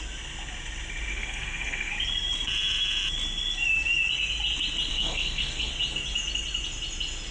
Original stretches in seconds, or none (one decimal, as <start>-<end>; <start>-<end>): 0.0-1.1; 1.9-4.9; 5.7-7.3